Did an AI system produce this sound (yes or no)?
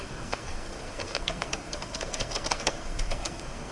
yes